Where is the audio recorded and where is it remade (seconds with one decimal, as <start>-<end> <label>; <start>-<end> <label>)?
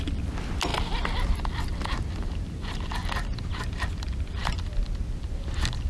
0.0-5.9 recorded